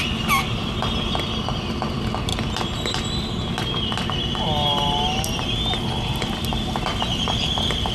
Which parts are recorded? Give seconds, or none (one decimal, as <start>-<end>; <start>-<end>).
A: 0.0-7.9